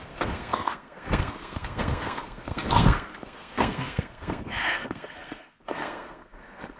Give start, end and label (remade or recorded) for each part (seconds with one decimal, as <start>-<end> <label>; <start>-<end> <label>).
0.0-6.8 remade